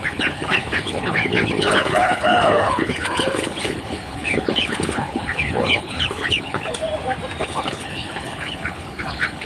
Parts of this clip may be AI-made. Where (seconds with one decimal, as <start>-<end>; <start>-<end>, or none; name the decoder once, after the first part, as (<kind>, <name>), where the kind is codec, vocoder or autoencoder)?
0.0-6.8 (codec, HILCodec); 7.4-9.5